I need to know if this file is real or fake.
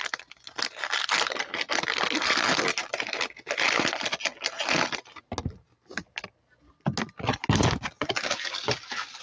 real